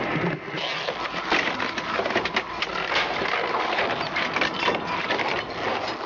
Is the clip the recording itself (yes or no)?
yes